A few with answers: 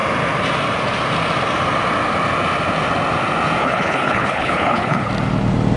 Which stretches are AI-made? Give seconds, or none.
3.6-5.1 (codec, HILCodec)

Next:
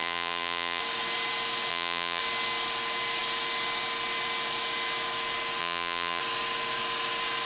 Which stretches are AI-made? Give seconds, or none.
0.0-0.8 (vocoder, BigVGAN v2); 1.7-2.2; 5.6-6.2

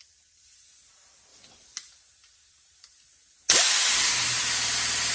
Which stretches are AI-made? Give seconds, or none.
none

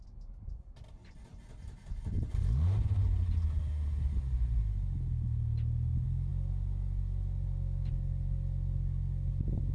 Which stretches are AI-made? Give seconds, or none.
none

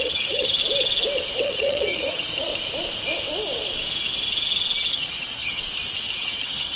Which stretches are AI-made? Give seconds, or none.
0.0-0.6 (vocoder, HiFi-GAN); 1.4-2.5; 4.9-5.6; 6.2-6.8